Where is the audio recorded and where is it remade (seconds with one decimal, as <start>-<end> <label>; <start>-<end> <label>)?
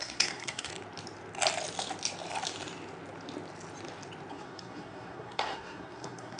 0.0-0.7 remade; 0.7-4.3 recorded; 4.3-6.4 remade